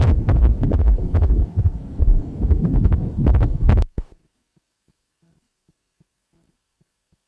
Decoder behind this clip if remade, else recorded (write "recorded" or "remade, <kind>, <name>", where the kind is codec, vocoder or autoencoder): remade, codec, SNAC